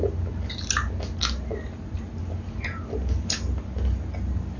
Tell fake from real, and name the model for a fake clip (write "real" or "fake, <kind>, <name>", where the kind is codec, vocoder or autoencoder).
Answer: real